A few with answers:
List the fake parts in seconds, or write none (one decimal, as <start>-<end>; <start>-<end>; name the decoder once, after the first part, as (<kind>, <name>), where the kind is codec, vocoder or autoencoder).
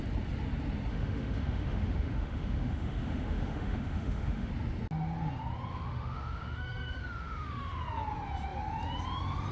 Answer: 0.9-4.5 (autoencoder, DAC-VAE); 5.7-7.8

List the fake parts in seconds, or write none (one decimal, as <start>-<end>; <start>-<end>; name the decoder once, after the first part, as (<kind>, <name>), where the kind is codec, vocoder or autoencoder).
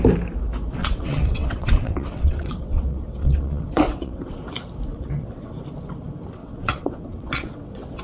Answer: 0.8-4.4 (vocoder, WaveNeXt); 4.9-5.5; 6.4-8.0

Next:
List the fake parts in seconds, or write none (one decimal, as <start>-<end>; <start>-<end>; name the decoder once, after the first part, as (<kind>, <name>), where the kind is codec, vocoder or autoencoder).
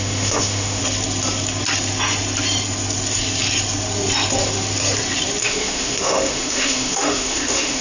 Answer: 0.0-0.8 (autoencoder, DAC-VAE); 5.4-7.8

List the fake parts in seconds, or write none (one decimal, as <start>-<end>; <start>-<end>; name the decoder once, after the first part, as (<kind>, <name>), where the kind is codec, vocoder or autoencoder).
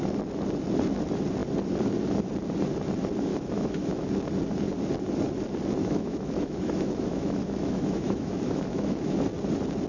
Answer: 3.3-4.1 (autoencoder, DAC-VAE); 5.8-9.2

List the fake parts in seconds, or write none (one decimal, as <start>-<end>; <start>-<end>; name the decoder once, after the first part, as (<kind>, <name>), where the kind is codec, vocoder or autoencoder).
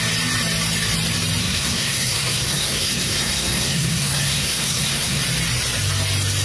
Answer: 1.4-5.2 (codec, SNAC)